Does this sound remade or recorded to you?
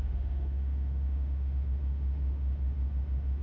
remade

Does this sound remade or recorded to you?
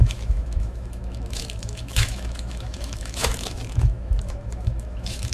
remade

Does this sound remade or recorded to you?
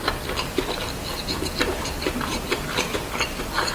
recorded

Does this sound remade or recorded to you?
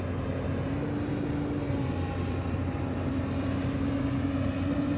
recorded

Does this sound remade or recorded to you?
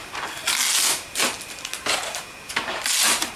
recorded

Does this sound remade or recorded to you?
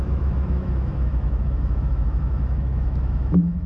remade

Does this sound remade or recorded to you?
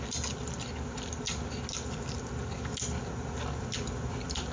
recorded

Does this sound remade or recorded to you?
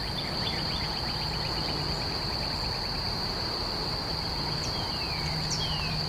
recorded